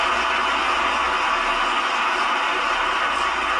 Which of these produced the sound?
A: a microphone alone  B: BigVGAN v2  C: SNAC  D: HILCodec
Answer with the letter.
A